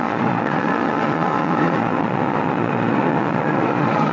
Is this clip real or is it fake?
fake